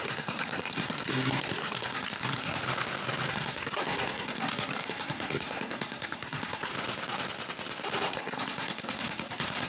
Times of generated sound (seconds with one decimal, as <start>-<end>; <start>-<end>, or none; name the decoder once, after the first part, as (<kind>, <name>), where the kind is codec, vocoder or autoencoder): 0.0-2.6 (codec, SNAC); 3.3-6.7; 8.1-9.7